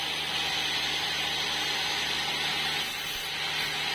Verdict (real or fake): real